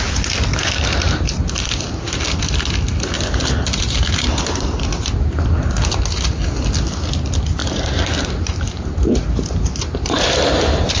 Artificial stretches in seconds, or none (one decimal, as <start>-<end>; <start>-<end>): 3.1-6.0; 7.6-11.0